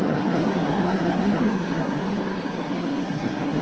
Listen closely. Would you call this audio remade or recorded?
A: remade